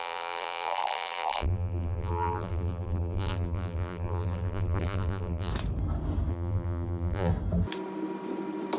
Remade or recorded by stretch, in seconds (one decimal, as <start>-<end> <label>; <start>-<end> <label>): 0.0-5.5 remade; 5.5-6.3 recorded; 6.3-7.3 remade; 7.3-8.8 recorded